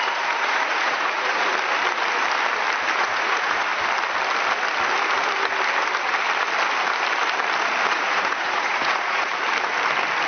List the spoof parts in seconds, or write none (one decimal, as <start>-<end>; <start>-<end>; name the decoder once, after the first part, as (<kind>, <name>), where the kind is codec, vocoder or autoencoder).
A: 0.0-1.5 (vocoder, Vocos); 3.0-3.7; 7.9-9.3